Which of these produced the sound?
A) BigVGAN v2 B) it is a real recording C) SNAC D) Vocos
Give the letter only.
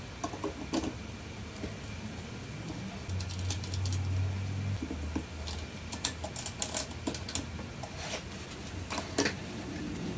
B